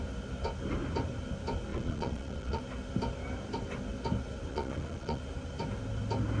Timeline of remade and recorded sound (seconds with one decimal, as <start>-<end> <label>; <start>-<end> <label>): 0.0-1.7 recorded; 1.7-2.6 remade; 2.6-4.5 recorded; 4.5-5.2 remade; 5.2-6.4 recorded